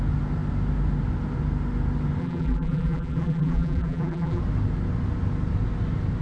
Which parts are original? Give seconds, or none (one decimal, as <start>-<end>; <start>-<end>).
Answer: 0.0-2.2; 4.4-6.2